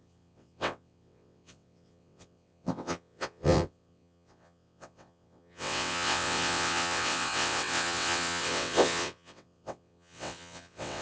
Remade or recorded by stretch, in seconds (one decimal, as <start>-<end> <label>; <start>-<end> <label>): 0.0-11.0 remade